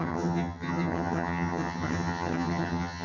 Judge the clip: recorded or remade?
remade